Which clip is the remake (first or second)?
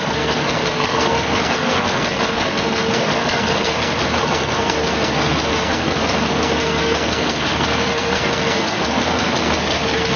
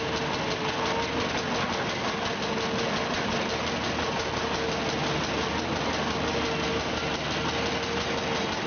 first